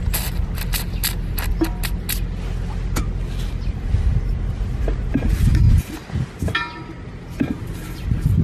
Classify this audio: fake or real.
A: real